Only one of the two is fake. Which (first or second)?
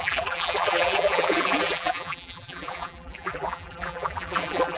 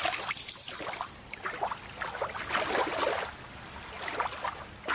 first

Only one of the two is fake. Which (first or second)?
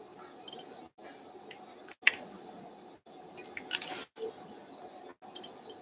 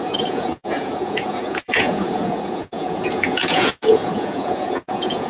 second